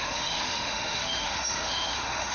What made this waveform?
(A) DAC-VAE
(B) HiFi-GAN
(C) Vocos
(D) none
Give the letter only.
A